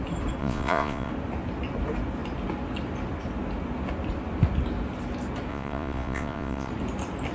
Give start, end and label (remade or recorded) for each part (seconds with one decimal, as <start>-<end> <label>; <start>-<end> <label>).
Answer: 0.0-0.4 recorded; 0.4-1.1 remade; 1.1-5.5 recorded; 5.5-6.7 remade; 6.7-7.3 recorded